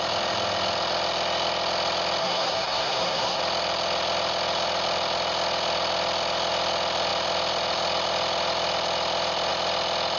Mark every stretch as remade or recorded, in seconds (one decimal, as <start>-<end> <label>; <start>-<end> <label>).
0.0-2.2 recorded; 2.2-3.4 remade; 3.4-10.2 recorded